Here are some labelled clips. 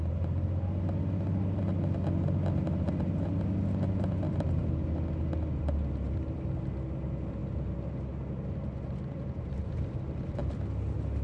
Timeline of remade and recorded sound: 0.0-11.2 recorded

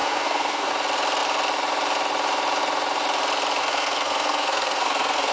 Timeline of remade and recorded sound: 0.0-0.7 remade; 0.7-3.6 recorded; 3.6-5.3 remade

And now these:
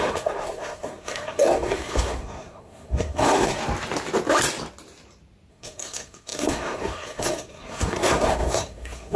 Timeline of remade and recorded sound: 0.0-3.6 remade; 3.6-5.5 recorded; 5.5-9.2 remade

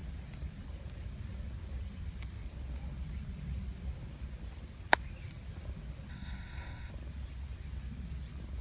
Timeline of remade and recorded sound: 0.0-6.1 recorded; 6.1-6.9 remade; 6.9-8.6 recorded

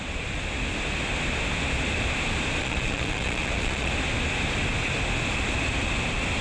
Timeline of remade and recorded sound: 0.0-2.6 recorded; 2.6-3.9 remade; 3.9-6.4 recorded

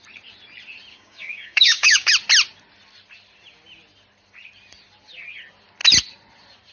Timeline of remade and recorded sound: 0.0-0.9 recorded; 0.9-2.1 remade; 2.1-6.7 recorded